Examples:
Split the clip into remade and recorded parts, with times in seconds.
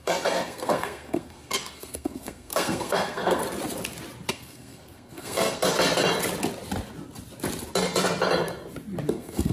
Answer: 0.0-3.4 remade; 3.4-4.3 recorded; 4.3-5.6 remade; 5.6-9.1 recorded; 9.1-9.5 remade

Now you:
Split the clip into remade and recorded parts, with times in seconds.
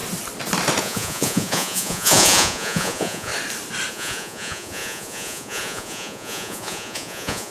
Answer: 0.0-0.8 recorded; 0.8-3.3 remade; 3.3-3.9 recorded; 3.9-7.5 remade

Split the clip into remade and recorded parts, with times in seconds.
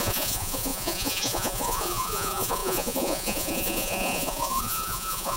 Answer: 0.0-5.4 remade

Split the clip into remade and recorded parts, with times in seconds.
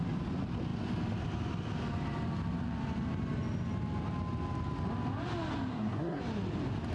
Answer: 0.0-5.7 recorded; 5.7-6.2 remade; 6.2-6.9 recorded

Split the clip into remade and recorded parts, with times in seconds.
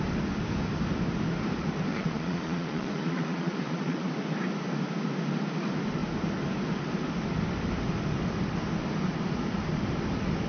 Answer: 0.0-1.9 recorded; 1.9-4.1 remade; 4.1-10.5 recorded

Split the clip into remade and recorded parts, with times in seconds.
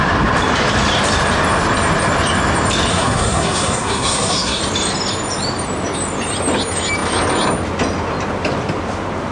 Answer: 0.0-2.9 recorded; 2.9-4.6 remade; 4.6-9.3 recorded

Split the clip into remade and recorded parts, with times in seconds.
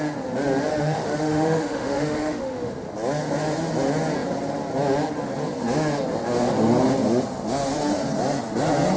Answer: 0.0-0.7 recorded; 0.7-2.7 remade; 2.7-9.0 recorded